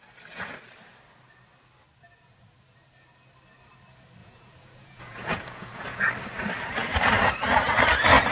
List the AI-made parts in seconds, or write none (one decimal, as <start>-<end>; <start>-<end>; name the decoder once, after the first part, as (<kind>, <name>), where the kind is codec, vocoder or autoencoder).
4.2-6.1 (vocoder, Vocos)